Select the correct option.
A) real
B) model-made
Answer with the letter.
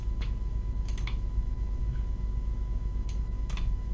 B